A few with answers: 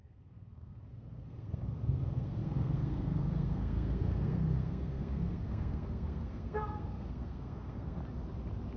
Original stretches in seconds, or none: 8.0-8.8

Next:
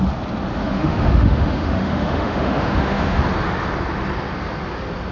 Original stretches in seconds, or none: 0.0-0.5; 3.2-5.1

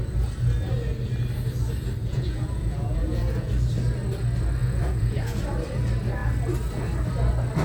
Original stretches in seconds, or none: 0.0-2.0; 3.5-4.6; 5.4-7.6

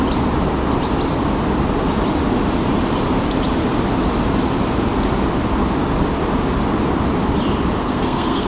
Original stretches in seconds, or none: 0.0-7.8

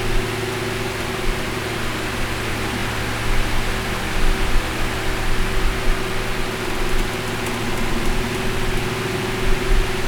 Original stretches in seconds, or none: 0.0-10.1

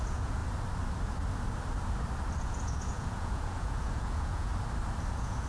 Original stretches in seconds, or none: 0.4-2.4; 4.5-5.1

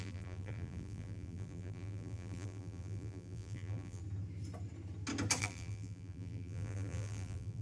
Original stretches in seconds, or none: 4.0-5.4